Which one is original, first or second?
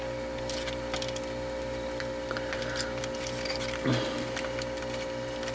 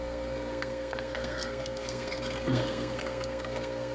first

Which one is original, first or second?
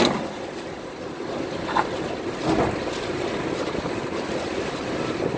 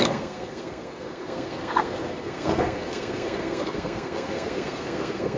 first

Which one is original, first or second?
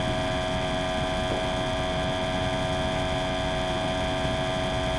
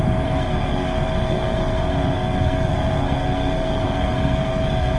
first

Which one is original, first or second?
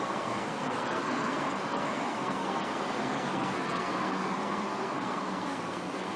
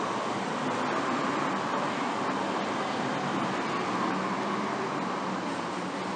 second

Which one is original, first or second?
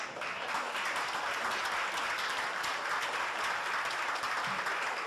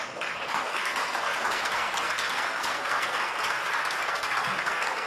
first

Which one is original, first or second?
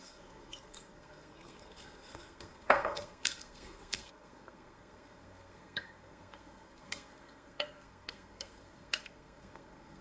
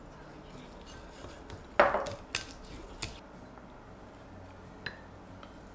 second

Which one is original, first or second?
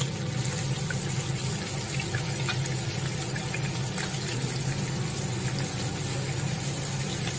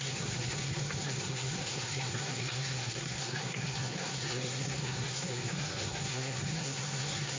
first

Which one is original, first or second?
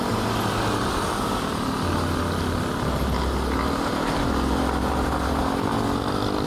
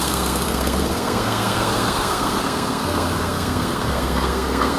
first